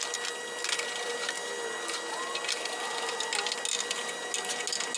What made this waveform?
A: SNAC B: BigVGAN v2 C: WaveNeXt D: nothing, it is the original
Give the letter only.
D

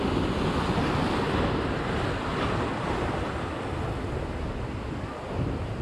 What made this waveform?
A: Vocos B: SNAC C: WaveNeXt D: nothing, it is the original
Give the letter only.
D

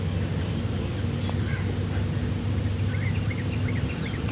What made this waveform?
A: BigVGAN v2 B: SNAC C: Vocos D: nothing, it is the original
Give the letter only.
D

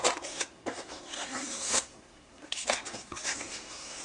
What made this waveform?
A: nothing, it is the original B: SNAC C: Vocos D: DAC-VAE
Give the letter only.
B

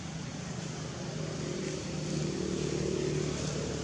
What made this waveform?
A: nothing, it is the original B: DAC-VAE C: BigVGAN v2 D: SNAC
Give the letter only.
A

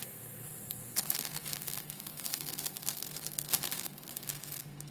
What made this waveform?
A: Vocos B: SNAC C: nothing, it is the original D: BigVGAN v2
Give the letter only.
B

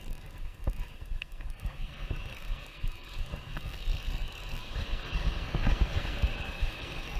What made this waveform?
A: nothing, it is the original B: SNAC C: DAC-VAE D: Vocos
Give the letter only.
B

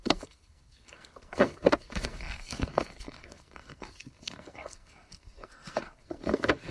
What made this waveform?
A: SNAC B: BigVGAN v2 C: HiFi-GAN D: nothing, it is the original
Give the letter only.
A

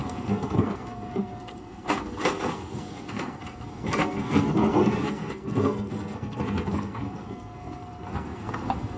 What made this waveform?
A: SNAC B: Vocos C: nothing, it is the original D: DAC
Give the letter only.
A